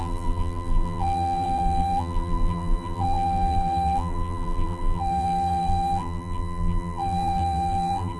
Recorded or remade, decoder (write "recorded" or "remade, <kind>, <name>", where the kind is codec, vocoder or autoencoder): remade, vocoder, BigVGAN v2